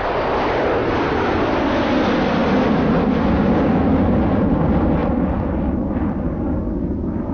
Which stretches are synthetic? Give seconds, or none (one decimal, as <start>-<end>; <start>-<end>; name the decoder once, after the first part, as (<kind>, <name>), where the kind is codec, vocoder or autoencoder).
none